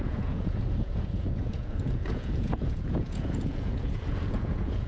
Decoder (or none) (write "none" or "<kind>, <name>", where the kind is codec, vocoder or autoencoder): vocoder, Vocos